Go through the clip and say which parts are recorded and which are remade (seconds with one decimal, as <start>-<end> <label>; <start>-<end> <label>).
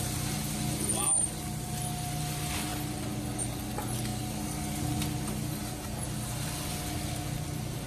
0.0-7.9 recorded